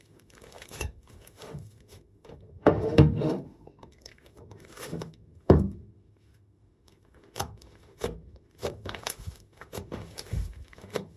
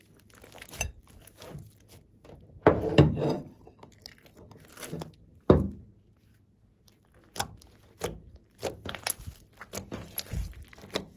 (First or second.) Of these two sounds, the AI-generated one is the first